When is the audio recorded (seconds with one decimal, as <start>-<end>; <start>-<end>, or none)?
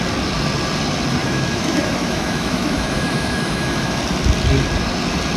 0.0-1.2; 4.0-5.4